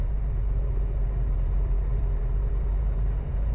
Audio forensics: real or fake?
fake